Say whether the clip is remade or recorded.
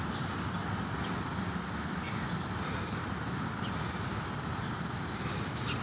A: recorded